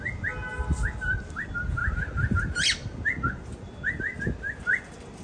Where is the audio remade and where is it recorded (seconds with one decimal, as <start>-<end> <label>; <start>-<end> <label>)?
0.0-5.2 recorded